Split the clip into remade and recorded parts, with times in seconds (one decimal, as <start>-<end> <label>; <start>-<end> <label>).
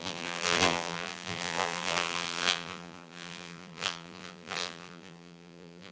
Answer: 0.0-5.9 remade